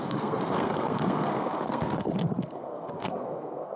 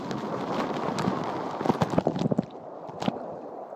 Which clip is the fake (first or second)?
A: first